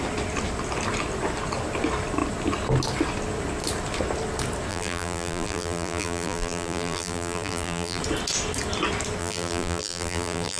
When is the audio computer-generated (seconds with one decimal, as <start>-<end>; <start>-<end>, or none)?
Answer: 4.7-8.0; 9.2-10.6